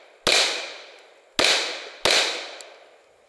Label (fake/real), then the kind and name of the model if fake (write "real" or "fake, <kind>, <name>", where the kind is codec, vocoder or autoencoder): real